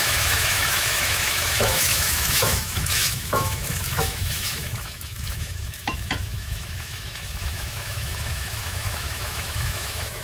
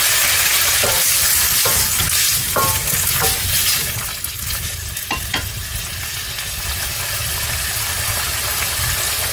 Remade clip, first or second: first